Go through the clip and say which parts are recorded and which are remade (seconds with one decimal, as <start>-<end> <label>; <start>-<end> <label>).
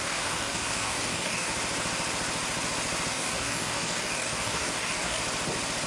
0.0-1.5 remade; 1.5-3.1 recorded; 3.1-5.2 remade; 5.2-5.9 recorded